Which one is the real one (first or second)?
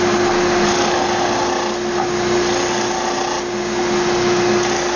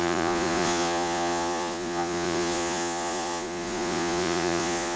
first